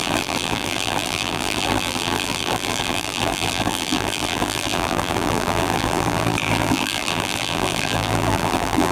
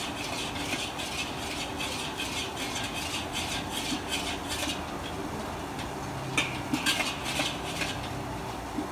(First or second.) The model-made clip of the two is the first